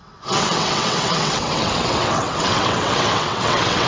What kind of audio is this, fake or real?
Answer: fake